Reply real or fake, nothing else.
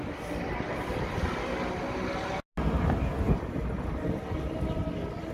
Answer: real